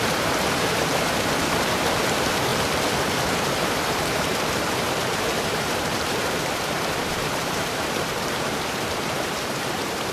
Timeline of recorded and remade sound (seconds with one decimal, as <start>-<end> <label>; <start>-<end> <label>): 0.0-2.5 remade; 2.5-3.1 recorded; 3.1-10.1 remade

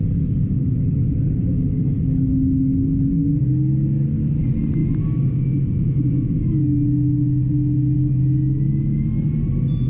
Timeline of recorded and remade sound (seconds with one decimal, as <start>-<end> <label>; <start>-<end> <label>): 0.0-4.8 recorded; 4.8-6.4 remade; 6.4-9.9 recorded

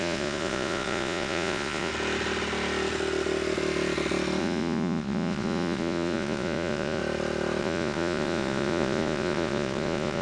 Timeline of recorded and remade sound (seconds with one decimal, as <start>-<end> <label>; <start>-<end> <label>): 0.0-1.9 remade; 1.9-4.4 recorded; 4.4-7.0 remade; 7.0-7.6 recorded; 7.6-10.2 remade

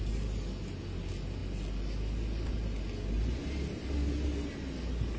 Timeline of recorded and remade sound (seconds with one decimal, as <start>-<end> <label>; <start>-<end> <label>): 0.0-5.2 recorded

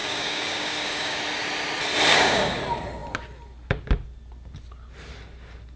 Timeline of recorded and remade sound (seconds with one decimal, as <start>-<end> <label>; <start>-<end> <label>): 0.0-1.2 remade; 1.2-2.1 recorded; 2.1-2.6 remade; 2.6-5.8 recorded